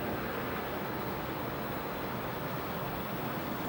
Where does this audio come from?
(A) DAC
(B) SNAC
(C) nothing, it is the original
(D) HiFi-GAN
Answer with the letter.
C